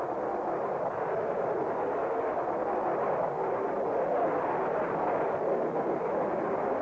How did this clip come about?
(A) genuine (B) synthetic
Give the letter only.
A